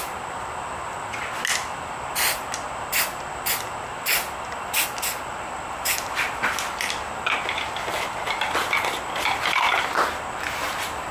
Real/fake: real